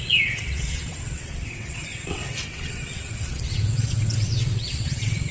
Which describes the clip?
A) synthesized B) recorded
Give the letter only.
A